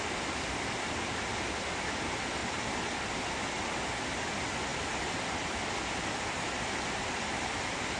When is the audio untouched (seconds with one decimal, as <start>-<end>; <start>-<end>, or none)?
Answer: 0.0-8.0

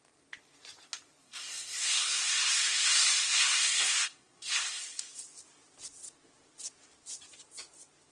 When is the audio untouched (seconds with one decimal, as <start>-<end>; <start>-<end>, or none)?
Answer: 0.0-1.2; 4.8-8.1

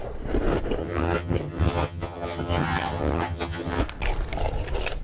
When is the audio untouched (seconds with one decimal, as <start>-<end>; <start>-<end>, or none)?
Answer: 0.0-0.8; 3.8-5.0